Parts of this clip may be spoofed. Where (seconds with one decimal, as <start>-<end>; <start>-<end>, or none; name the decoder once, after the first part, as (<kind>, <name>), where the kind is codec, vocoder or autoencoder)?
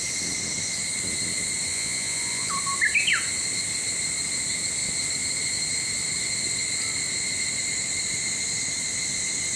1.7-2.5 (vocoder, Vocos)